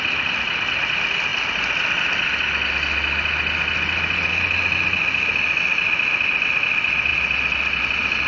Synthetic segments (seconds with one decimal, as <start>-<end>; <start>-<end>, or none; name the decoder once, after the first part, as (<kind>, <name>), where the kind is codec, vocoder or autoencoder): none